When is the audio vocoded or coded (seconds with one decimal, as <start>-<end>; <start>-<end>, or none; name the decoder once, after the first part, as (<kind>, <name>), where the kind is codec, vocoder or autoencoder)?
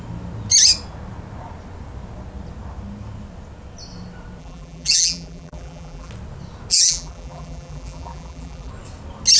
4.4-6.1 (vocoder, BigVGAN v2); 6.7-8.7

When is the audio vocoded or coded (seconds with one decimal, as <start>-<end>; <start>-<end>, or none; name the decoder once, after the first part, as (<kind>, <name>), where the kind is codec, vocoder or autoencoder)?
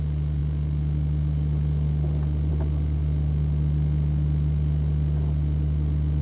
none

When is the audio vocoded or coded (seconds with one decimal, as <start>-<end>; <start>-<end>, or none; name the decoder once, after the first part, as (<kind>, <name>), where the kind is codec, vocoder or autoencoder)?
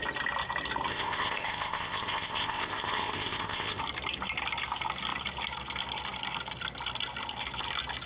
0.9-3.8 (codec, ZipCodec)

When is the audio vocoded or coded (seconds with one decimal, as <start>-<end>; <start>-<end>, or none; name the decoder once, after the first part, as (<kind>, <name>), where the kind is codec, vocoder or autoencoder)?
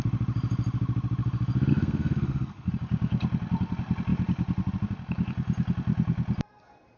1.7-2.7 (codec, SNAC)